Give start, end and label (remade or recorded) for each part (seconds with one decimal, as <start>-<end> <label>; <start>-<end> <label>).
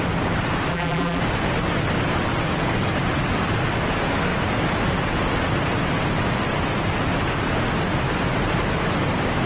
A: 0.0-0.7 recorded; 0.7-1.2 remade; 1.2-9.5 recorded